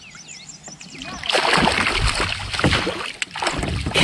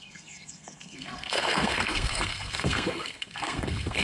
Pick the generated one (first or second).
second